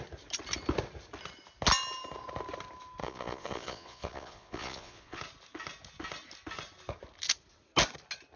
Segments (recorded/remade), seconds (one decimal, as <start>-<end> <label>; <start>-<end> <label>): 0.0-3.0 recorded; 3.0-5.2 remade; 5.2-8.4 recorded